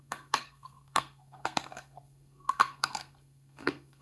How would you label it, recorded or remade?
remade